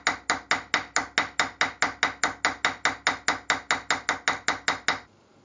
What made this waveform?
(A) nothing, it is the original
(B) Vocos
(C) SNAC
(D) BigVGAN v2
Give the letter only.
A